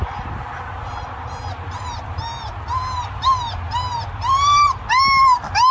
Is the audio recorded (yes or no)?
yes